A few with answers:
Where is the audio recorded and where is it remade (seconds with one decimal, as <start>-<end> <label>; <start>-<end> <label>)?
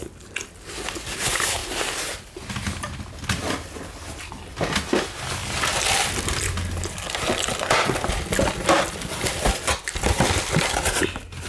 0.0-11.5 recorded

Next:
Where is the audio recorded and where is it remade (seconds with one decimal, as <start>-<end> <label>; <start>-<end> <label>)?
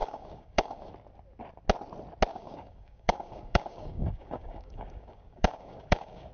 0.0-0.9 remade; 0.9-2.3 recorded; 2.3-6.3 remade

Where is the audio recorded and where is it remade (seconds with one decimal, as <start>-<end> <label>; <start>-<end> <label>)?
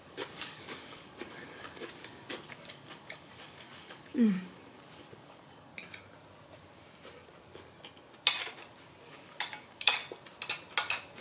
0.0-5.7 remade; 5.7-9.0 recorded; 9.0-10.0 remade; 10.0-11.2 recorded